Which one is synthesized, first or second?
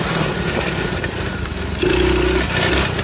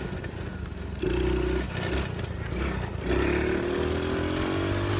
first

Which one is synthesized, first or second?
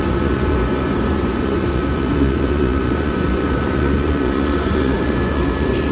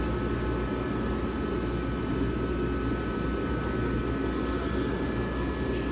first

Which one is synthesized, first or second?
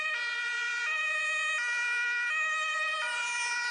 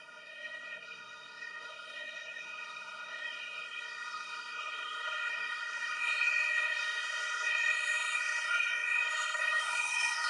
second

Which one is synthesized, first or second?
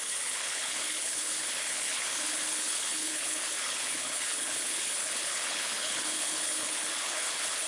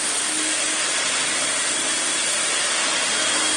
first